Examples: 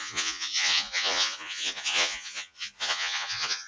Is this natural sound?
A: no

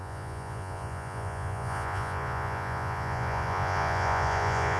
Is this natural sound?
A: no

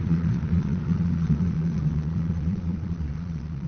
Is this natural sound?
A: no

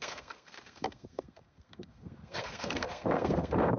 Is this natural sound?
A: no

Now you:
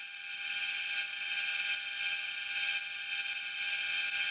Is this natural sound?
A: yes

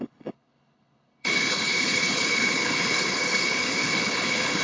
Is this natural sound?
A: no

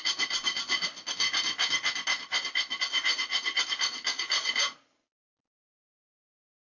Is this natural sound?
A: yes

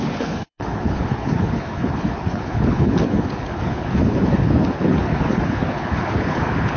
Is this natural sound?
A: no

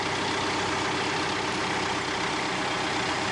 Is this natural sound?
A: yes